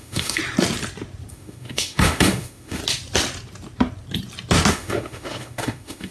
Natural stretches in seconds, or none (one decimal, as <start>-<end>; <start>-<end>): 0.4-1.3; 2.8-4.7